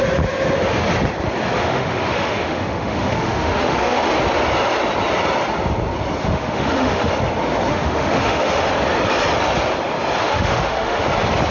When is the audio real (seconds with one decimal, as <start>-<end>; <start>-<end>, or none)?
0.0-1.6; 4.1-6.2; 7.1-7.7; 8.7-10.2; 11.0-11.5